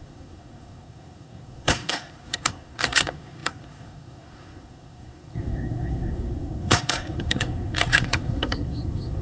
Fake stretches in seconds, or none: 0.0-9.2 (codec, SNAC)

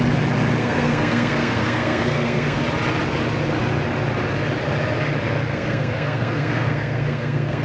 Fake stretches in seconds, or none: 0.6-2.6 (codec, SNAC); 5.5-7.6

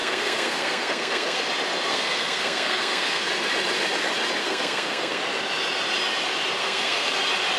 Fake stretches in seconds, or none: 0.0-1.4 (codec, SNAC); 1.9-3.3; 4.4-5.2; 6.6-7.1

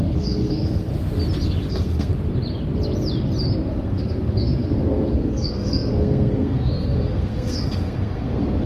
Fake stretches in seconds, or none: 0.0-0.9 (codec, SNAC); 1.7-2.1; 3.7-8.7

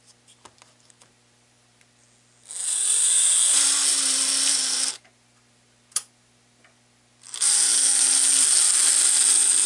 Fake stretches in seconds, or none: none

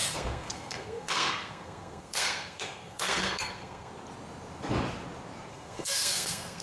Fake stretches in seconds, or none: 0.0-3.9 (codec, SNAC); 5.5-6.6

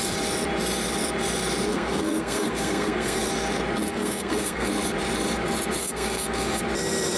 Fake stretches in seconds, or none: 1.7-3.3 (codec, SNAC); 3.9-4.7; 5.8-6.6